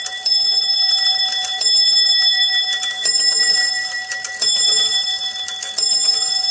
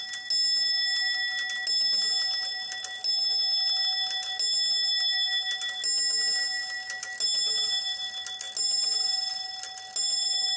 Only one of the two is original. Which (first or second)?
second